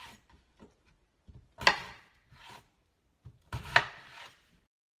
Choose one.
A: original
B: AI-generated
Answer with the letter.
A